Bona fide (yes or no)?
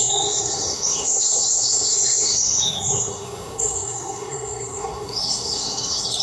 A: no